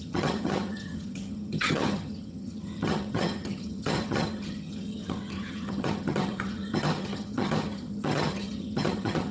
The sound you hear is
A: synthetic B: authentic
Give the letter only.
A